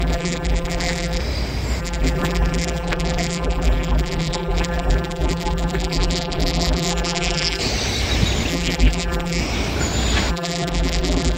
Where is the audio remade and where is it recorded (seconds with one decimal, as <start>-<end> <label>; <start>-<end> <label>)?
0.0-1.2 remade; 1.2-1.8 recorded; 1.8-7.6 remade; 7.6-8.5 recorded; 8.5-9.4 remade; 9.4-10.3 recorded; 10.3-11.4 remade